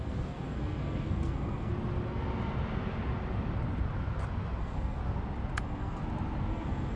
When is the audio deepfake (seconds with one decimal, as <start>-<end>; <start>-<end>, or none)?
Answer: 0.0-1.7; 4.6-5.0; 5.6-6.0; 6.5-7.0